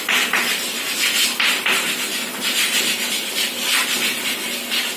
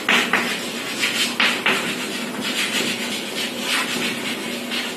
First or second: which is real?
second